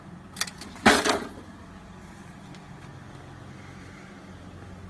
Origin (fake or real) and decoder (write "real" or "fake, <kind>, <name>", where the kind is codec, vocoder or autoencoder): real